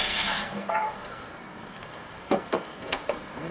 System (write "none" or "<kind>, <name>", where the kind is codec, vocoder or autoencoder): codec, SNAC